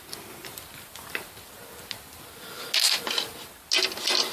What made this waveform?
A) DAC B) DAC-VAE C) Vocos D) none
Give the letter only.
D